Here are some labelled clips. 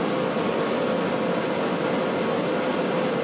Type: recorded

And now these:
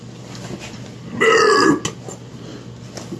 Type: recorded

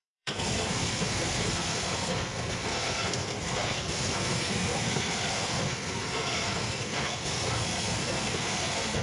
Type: remade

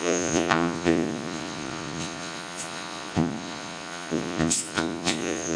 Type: remade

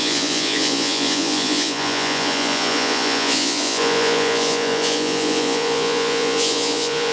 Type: remade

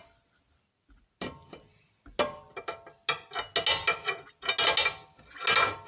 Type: recorded